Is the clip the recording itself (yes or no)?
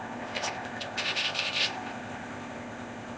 no